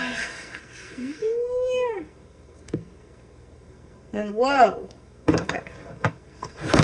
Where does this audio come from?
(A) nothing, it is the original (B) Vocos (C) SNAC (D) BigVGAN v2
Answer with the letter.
C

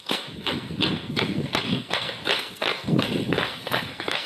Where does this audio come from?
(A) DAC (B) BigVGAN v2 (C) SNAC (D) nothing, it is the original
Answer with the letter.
C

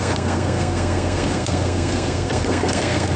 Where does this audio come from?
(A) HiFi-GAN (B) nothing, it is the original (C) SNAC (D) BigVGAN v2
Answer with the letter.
C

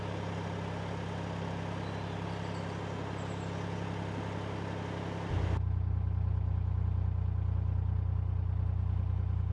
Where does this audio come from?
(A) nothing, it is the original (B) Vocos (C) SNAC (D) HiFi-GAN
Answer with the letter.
A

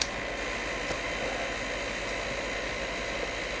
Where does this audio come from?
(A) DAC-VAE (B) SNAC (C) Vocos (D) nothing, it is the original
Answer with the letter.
D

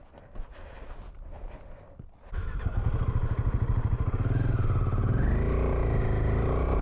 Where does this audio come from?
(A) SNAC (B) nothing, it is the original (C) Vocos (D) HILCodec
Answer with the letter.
B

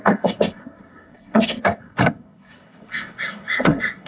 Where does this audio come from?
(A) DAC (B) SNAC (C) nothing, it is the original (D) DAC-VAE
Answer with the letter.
B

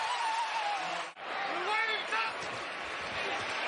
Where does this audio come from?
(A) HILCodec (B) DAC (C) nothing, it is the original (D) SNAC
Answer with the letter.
C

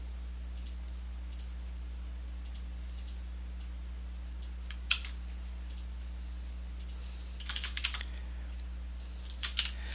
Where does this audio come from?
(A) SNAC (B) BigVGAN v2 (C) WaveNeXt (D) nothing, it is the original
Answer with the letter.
D